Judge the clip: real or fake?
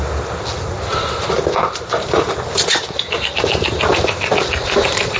real